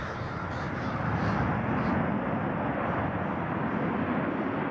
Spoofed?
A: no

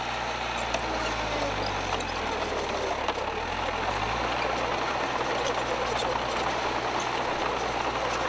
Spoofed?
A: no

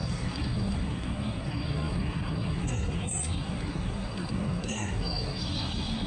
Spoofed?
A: yes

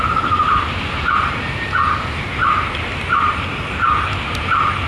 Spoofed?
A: no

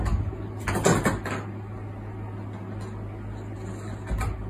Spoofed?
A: no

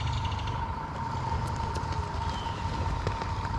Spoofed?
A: no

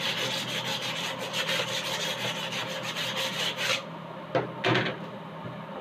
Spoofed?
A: no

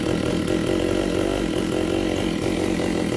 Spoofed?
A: no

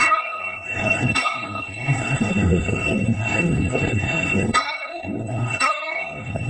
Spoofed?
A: yes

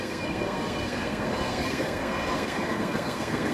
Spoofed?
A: yes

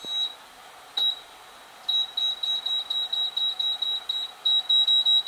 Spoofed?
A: no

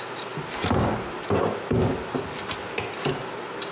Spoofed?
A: no